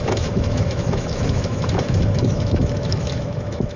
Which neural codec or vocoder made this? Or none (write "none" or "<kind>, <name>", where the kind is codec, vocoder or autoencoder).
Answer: autoencoder, DAC-VAE